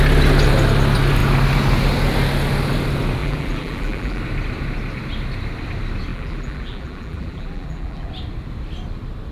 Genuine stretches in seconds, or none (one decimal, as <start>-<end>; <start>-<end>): 0.0-3.2; 4.2-6.1; 8.1-9.3